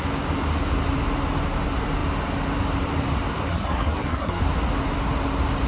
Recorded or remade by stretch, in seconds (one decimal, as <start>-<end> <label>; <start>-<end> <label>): 0.0-3.5 recorded; 3.5-4.4 remade; 4.4-5.7 recorded